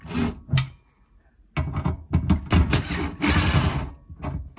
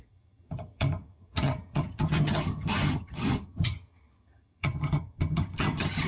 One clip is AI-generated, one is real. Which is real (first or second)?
first